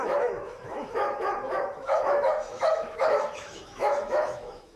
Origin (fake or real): fake